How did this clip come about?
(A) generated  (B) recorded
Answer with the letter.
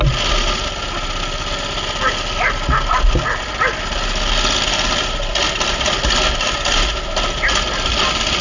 B